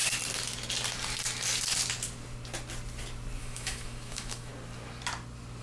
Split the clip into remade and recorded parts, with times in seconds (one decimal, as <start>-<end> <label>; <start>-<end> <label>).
0.0-3.4 recorded; 3.4-4.5 remade; 4.5-5.6 recorded